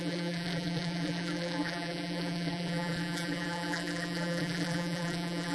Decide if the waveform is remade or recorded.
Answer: remade